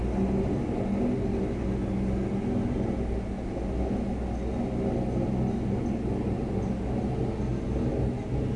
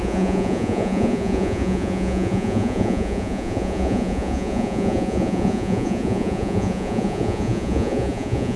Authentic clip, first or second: first